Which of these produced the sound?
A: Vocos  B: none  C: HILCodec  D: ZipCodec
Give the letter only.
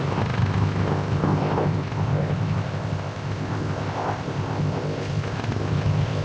D